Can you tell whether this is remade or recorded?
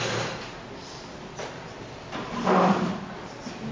recorded